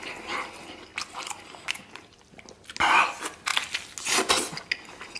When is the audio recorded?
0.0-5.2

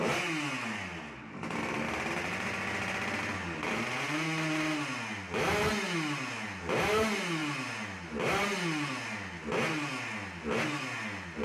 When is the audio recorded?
0.0-11.4

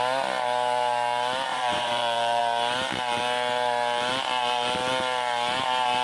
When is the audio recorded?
0.0-1.5; 2.4-6.0

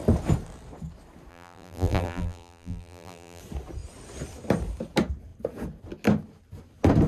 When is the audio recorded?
0.0-1.3; 3.4-7.1

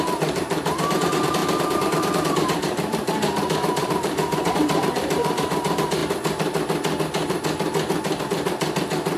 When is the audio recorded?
6.0-8.2